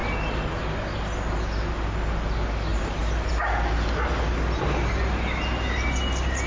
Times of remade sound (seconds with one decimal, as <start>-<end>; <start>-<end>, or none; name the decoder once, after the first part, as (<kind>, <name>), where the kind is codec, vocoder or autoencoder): 2.7-3.3 (vocoder, BigVGAN v2)